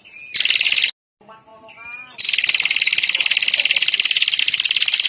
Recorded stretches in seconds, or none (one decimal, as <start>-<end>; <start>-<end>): 0.0-5.1